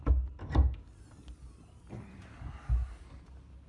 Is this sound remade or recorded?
recorded